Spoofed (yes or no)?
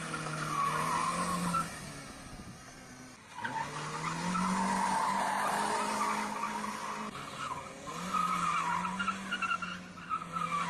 no